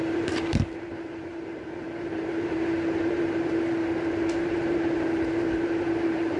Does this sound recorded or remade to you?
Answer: remade